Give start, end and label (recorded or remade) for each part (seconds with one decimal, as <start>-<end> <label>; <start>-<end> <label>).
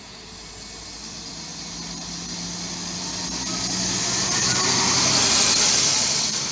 0.0-6.5 recorded